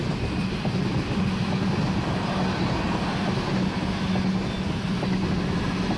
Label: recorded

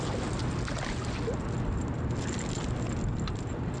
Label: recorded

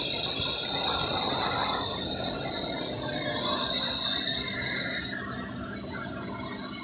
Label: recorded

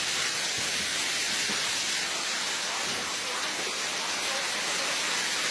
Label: recorded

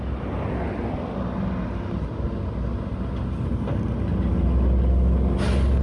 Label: recorded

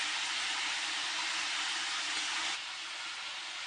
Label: recorded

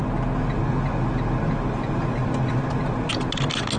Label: recorded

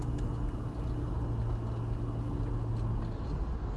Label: recorded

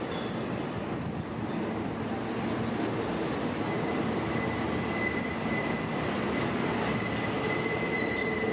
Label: recorded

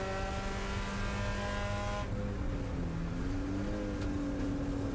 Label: recorded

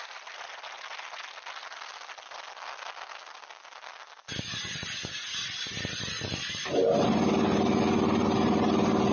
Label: recorded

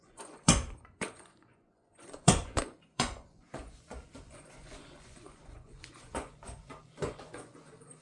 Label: remade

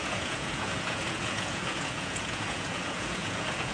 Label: remade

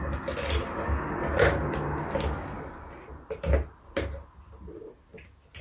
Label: recorded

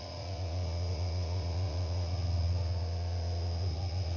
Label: remade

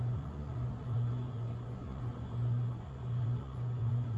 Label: remade